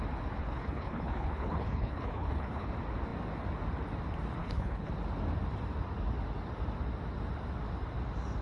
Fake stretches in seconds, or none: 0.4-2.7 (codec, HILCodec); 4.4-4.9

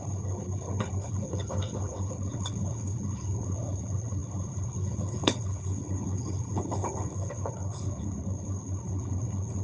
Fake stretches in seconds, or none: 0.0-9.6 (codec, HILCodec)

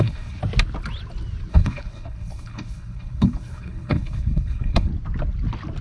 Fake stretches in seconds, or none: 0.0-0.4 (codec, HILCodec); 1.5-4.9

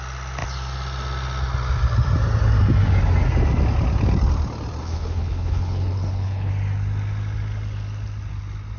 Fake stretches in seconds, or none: 4.8-6.5 (codec, HILCodec)

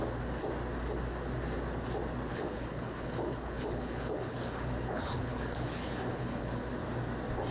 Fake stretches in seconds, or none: 2.3-6.8 (codec, HILCodec)

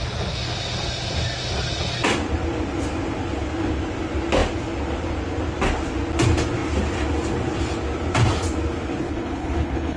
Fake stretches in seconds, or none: 9.0-10.0 (codec, HILCodec)